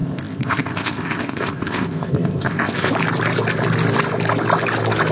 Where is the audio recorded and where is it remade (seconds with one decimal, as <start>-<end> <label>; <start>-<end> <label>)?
0.0-2.9 remade; 2.9-5.1 recorded